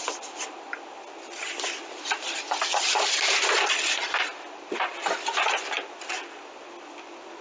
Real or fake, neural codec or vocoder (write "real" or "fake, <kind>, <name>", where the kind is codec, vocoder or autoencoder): real